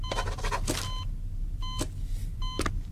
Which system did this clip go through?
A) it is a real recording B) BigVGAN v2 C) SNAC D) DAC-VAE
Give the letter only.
A